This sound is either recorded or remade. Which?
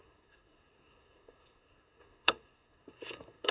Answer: remade